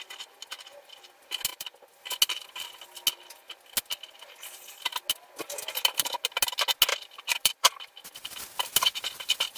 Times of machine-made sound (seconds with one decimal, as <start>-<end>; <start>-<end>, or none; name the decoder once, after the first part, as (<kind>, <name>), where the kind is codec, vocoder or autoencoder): 0.5-1.1 (vocoder, BigVGAN v2); 1.5-2.0; 6.9-7.7